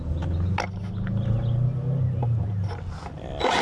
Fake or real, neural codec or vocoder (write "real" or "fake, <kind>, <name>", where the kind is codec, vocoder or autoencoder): real